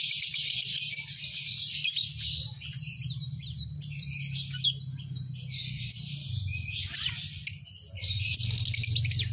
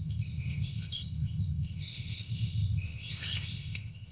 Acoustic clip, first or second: first